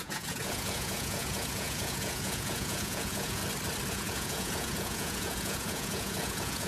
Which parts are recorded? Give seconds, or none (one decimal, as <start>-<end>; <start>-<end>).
3.4-3.9